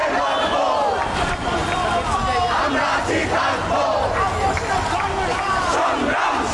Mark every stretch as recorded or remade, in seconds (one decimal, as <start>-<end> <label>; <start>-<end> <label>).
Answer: 0.0-6.5 recorded